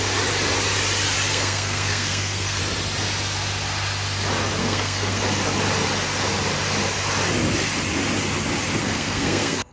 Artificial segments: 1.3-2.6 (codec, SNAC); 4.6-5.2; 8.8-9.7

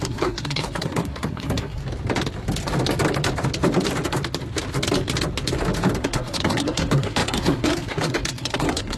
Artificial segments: 0.0-1.8 (codec, SNAC); 6.0-9.0